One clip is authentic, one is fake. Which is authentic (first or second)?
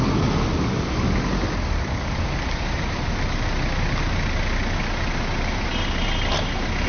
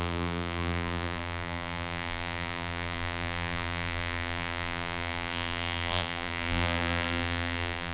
first